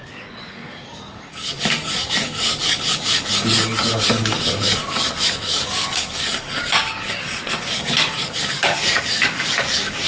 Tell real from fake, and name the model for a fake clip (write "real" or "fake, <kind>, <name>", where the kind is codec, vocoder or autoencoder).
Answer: fake, codec, DAC